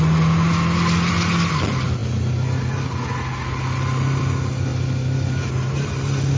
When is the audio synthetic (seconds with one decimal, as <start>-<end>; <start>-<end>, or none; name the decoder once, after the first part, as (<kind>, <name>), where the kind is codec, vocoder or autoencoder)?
none